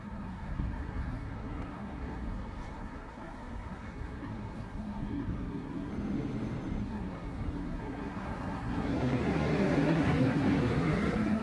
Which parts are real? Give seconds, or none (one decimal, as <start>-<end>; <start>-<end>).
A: 5.9-6.8